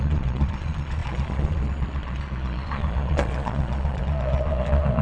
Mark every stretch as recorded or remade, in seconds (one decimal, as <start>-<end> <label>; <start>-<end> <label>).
0.0-5.0 remade